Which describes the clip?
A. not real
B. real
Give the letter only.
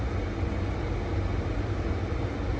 B